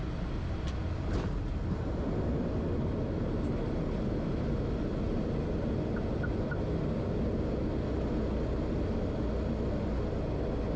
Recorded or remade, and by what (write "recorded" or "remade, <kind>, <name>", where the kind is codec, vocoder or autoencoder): recorded